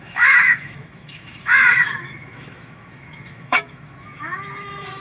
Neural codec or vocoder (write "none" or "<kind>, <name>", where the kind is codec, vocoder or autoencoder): autoencoder, DAC-VAE